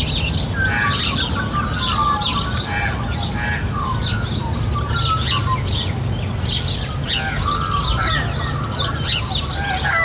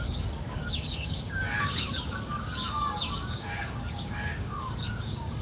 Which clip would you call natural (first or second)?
first